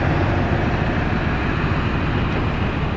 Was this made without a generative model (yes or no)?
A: yes